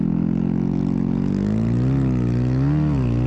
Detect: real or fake real